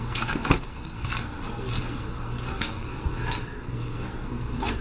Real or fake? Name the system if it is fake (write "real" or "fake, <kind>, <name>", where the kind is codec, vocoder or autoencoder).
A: fake, codec, SNAC